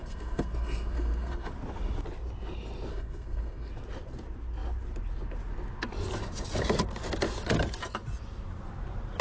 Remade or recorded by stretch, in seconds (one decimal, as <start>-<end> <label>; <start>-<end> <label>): 0.0-1.5 remade; 1.5-2.9 recorded; 2.9-3.7 remade; 3.7-9.2 recorded